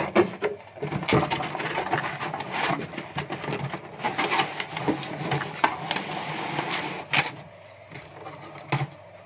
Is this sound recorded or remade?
recorded